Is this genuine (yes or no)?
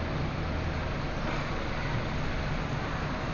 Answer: yes